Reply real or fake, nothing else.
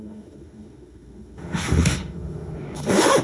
fake